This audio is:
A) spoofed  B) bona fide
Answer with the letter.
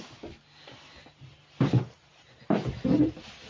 B